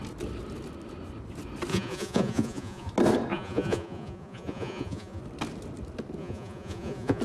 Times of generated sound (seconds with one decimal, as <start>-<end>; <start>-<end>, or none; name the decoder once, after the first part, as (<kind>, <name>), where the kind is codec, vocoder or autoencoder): 1.7-2.9 (vocoder, Vocos); 3.3-5.2; 6.2-7.2